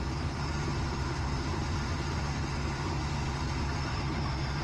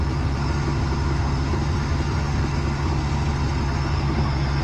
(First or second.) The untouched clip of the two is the second